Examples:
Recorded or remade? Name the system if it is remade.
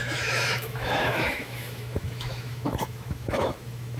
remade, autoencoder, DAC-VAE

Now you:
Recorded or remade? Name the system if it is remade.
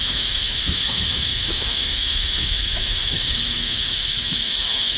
remade, autoencoder, DAC-VAE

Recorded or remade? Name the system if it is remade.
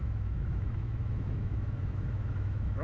remade, autoencoder, DAC-VAE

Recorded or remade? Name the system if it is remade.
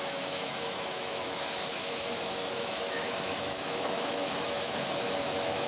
remade, autoencoder, DAC-VAE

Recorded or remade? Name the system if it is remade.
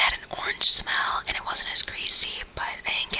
recorded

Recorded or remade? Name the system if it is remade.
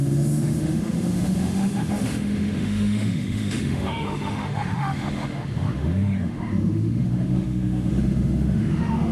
remade, autoencoder, DAC-VAE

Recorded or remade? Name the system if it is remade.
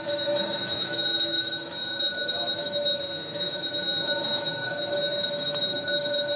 remade, autoencoder, DAC-VAE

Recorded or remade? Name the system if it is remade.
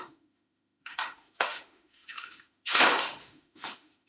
remade, autoencoder, DAC-VAE